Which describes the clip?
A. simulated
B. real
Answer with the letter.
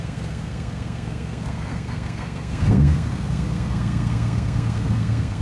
A